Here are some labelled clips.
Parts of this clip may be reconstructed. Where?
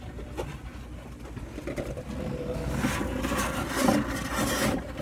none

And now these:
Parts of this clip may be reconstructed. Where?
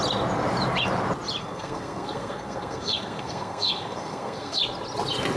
1.4-4.6 (codec, SNAC)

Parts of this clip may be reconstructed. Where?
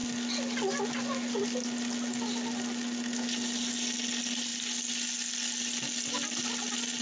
none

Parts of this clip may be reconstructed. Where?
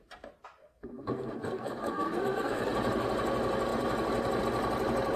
0.6-2.6 (codec, SNAC)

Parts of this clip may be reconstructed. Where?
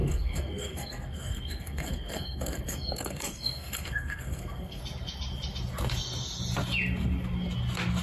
0.0-4.8 (codec, SNAC)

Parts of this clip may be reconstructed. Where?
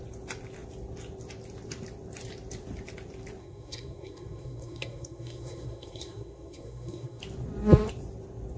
3.4-7.2 (codec, SNAC)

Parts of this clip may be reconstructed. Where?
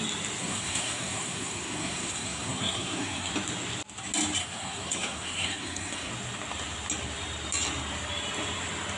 0.4-3.3 (codec, SNAC); 4.4-6.1